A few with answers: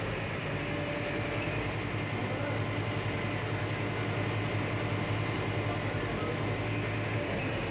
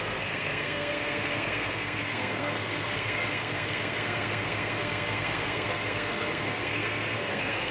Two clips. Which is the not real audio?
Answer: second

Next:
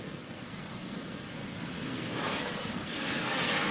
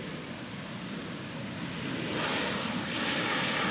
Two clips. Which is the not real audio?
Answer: first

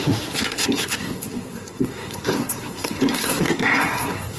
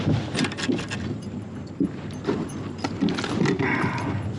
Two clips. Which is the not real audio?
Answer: first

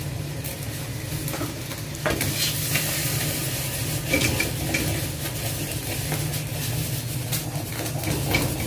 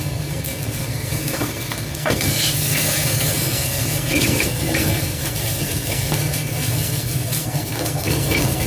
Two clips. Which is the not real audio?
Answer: second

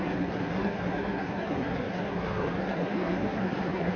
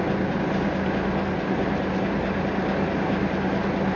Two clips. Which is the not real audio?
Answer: first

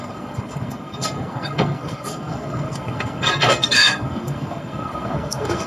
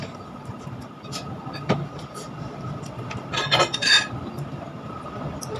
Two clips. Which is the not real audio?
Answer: first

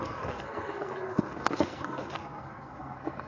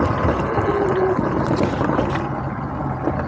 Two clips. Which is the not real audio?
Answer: first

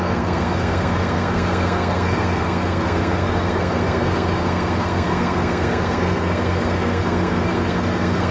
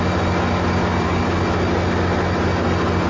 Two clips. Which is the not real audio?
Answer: first